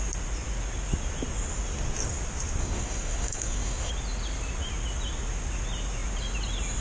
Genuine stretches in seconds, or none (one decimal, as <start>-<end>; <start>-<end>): 0.0-2.6; 3.9-6.8